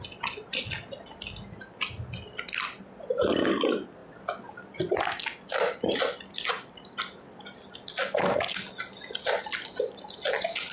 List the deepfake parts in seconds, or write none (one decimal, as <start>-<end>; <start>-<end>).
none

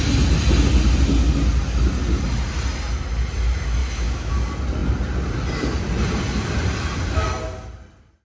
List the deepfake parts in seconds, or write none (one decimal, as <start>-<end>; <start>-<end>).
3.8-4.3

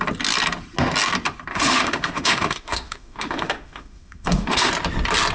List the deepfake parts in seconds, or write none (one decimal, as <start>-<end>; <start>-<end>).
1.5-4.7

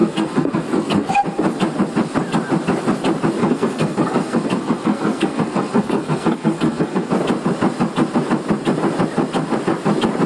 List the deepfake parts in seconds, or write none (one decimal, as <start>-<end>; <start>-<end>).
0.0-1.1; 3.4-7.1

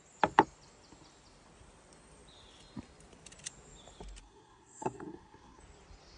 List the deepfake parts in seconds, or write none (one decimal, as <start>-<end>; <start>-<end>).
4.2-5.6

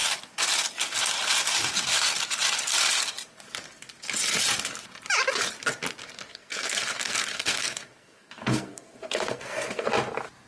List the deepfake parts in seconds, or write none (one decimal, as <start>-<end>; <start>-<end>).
6.3-9.9